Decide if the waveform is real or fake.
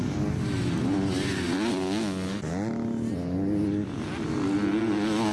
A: real